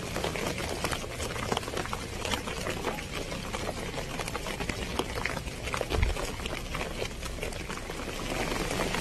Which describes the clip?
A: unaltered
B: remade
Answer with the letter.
A